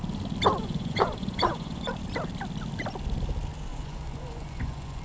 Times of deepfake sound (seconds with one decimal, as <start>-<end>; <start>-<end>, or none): 0.6-1.9; 3.7-5.0